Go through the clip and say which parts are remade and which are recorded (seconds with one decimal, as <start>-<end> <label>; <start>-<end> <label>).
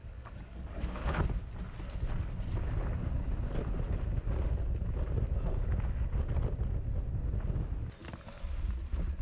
0.0-1.2 remade; 1.2-9.2 recorded